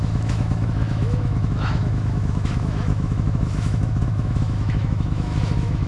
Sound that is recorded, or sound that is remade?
remade